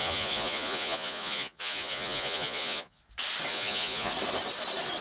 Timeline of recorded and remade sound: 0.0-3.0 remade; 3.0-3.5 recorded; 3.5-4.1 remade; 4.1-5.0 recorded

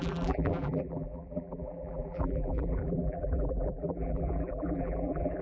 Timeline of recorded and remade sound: 0.0-5.4 remade

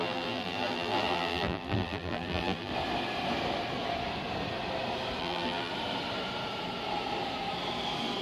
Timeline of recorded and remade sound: 0.0-2.7 remade; 2.7-5.2 recorded; 5.2-5.7 remade; 5.7-8.2 recorded

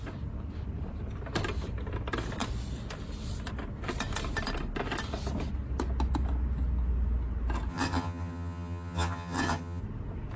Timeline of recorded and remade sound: 0.0-7.7 recorded; 7.7-9.8 remade; 9.8-10.4 recorded

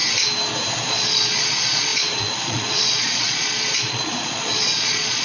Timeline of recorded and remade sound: 0.0-0.7 recorded; 0.7-5.2 remade

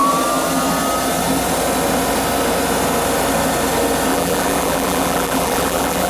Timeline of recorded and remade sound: 0.0-4.1 recorded; 4.1-6.1 remade

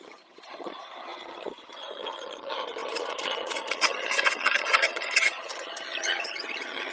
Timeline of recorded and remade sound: 0.0-6.9 remade

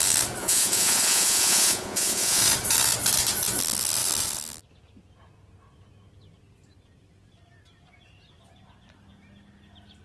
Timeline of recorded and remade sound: 0.0-0.4 recorded; 0.4-2.4 remade; 2.4-10.0 recorded